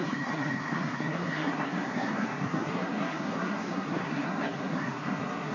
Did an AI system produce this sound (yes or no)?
yes